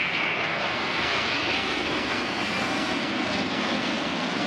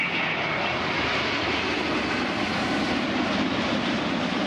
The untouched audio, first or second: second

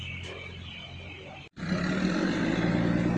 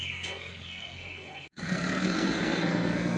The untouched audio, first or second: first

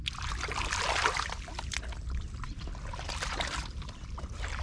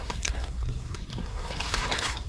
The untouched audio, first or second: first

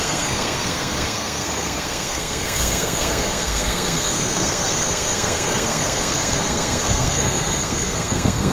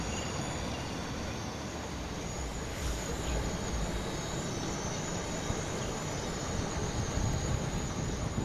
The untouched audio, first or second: second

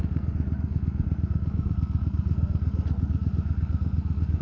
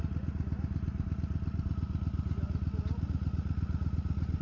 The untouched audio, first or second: second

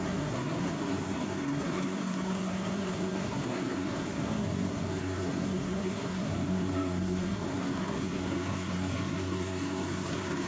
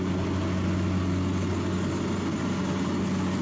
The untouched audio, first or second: second